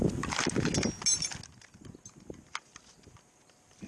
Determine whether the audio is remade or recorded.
recorded